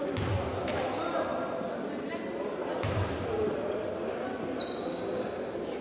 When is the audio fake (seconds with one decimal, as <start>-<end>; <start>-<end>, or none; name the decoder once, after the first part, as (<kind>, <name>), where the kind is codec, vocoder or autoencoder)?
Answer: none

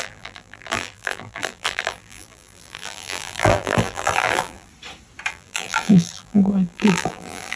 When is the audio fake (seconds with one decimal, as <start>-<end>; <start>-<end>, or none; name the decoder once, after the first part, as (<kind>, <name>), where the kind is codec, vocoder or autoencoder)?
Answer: 0.0-4.7 (vocoder, BigVGAN v2); 5.3-7.6

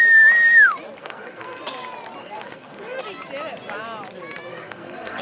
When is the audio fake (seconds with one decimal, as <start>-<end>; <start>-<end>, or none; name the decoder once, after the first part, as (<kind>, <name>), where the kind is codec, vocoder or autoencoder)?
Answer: 1.0-1.6 (codec, SNAC); 2.2-3.0; 4.5-5.2